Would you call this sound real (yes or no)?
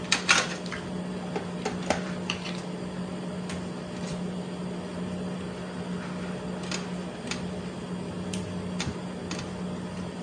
no